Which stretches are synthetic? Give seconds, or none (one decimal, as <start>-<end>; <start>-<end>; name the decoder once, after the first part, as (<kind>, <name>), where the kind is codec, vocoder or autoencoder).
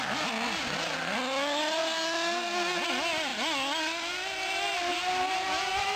none